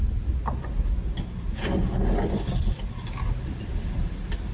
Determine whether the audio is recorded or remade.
recorded